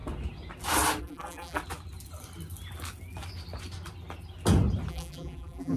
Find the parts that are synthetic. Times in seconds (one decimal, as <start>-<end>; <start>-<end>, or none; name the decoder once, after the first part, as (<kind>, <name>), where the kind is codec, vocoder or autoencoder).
1.0-1.6 (vocoder, BigVGAN v2); 4.9-5.8